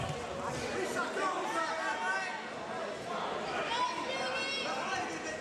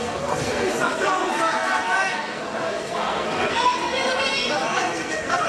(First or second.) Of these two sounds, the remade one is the second